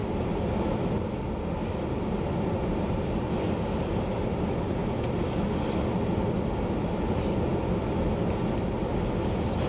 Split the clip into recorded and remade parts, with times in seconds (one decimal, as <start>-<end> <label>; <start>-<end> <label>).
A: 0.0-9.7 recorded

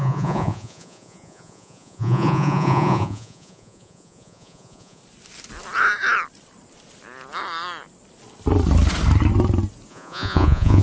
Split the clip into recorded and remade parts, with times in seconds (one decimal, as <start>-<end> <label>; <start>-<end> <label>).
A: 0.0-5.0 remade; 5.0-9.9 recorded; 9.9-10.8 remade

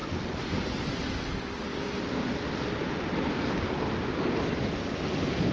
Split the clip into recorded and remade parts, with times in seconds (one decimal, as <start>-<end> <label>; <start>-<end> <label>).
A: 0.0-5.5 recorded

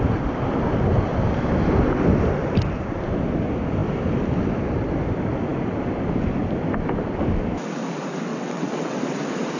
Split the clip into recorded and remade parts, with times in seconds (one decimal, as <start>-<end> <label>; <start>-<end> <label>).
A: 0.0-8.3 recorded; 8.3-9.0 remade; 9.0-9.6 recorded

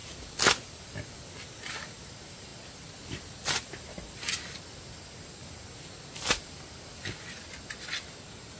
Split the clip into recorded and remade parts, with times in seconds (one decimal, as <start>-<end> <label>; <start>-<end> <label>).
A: 0.0-8.6 recorded

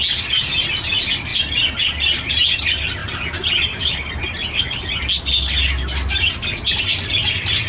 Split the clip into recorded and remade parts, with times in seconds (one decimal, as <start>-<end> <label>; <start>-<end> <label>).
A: 0.0-7.7 recorded

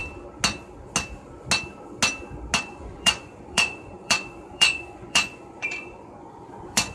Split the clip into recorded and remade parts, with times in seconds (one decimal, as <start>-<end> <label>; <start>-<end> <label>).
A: 0.0-2.6 recorded; 2.6-6.9 remade

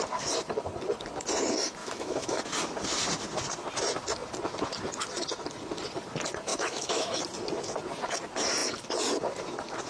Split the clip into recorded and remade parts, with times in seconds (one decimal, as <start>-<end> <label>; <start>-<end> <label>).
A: 0.0-1.8 recorded; 1.8-2.4 remade; 2.4-6.5 recorded; 6.5-7.2 remade; 7.2-9.9 recorded